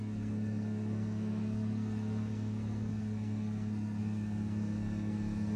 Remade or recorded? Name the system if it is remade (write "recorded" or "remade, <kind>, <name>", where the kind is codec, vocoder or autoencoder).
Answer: remade, codec, SNAC